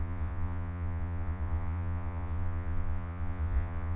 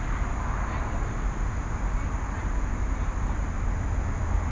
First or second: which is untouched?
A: second